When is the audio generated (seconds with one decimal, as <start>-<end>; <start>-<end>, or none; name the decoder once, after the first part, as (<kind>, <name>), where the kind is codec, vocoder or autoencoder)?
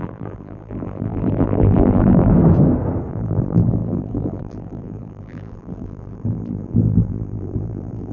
0.0-2.3 (vocoder, BigVGAN v2); 3.1-8.1